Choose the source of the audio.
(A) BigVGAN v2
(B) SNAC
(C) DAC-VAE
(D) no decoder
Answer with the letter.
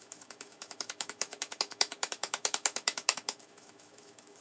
C